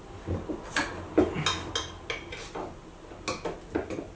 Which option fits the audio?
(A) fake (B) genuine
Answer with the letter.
B